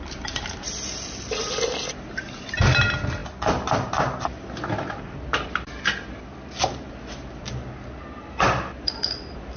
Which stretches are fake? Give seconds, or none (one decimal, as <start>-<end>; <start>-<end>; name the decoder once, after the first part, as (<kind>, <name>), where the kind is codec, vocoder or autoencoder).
none